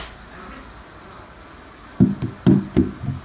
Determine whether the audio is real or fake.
real